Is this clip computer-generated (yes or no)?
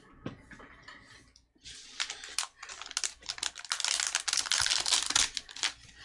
no